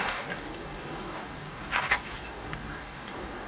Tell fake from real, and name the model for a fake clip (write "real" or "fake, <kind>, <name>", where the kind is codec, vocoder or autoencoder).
fake, codec, DAC